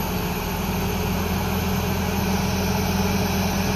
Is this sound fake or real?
real